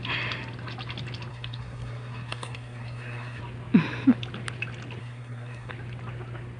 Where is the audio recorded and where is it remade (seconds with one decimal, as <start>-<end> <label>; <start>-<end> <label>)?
0.0-1.3 recorded; 1.3-3.4 remade; 3.4-5.0 recorded; 5.0-5.7 remade; 5.7-6.6 recorded